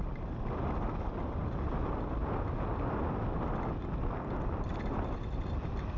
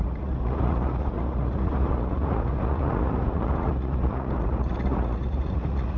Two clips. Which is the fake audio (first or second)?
second